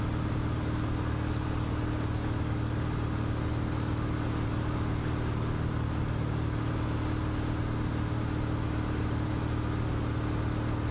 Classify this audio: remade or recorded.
recorded